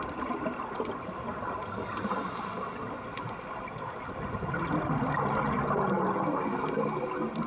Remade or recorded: recorded